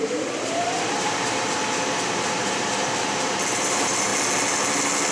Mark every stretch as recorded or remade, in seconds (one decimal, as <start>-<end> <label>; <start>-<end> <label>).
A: 0.0-4.1 remade; 4.1-5.1 recorded